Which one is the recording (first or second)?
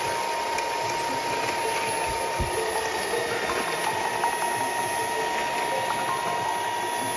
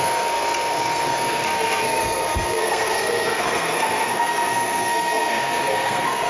first